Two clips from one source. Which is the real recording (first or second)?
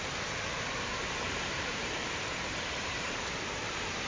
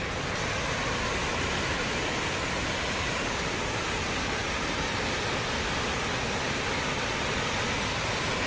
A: second